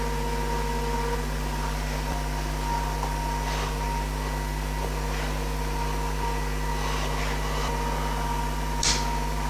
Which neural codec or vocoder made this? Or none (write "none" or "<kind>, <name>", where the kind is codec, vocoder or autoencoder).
none